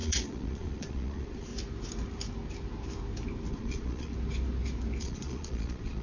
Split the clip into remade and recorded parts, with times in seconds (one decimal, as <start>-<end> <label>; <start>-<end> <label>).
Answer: 0.0-1.5 remade; 1.5-3.5 recorded; 3.5-4.1 remade; 4.1-5.0 recorded; 5.0-6.0 remade